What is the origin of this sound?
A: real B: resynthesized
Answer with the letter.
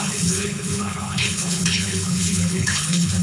B